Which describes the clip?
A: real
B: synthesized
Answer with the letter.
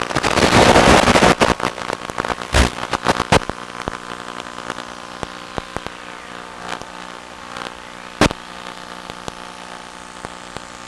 A